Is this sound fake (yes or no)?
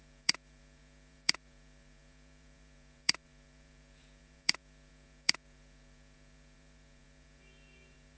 yes